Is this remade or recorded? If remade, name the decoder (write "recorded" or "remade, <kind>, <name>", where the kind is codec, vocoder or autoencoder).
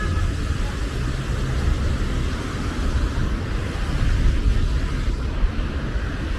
recorded